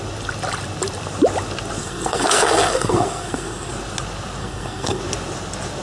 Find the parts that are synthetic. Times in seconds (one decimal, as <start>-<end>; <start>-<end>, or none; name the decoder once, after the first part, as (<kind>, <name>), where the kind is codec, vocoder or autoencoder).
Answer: 1.8-3.7 (codec, SNAC); 4.4-5.0